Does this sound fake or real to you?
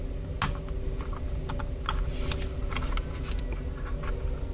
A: real